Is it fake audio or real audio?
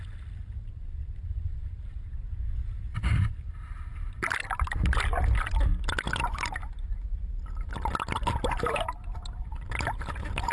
real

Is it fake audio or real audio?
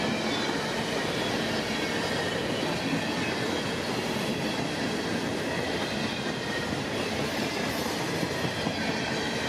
real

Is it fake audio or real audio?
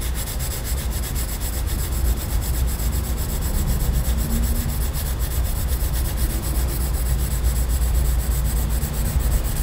real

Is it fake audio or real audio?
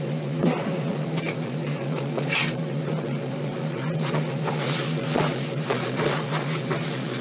fake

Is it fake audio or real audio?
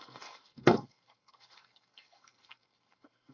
fake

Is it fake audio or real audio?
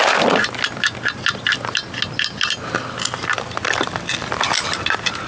real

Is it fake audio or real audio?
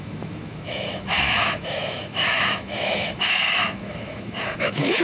fake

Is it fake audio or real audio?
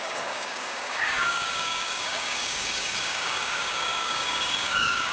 fake